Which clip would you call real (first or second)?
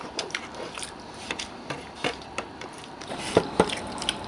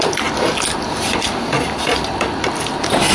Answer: second